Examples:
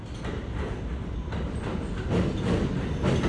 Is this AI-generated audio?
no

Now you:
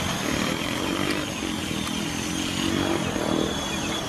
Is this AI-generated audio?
no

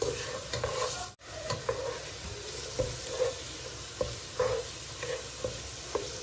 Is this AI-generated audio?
no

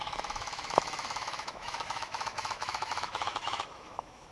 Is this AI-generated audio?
yes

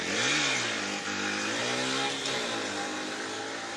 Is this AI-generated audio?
no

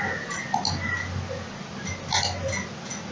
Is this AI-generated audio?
no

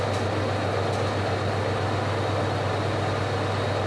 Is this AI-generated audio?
no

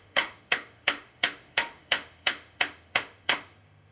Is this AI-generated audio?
yes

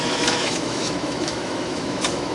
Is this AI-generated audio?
yes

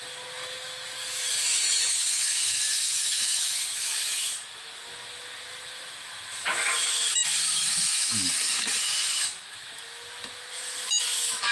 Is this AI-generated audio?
yes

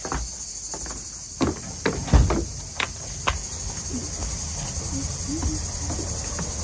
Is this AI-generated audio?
no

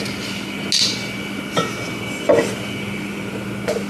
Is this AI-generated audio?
no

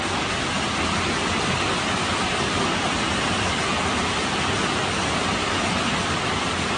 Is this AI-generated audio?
no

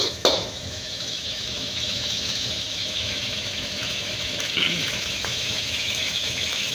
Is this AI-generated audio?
yes